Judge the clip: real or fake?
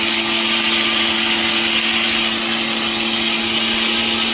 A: real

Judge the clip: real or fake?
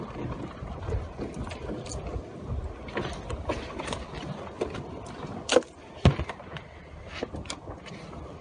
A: real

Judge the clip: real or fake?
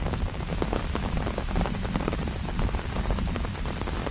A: real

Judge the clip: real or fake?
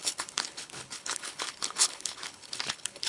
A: fake